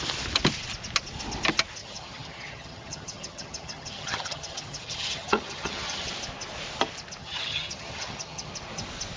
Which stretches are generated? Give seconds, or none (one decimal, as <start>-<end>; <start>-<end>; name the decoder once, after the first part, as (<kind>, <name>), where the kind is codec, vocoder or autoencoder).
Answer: 1.8-6.1 (vocoder, HiFi-GAN); 7.2-8.5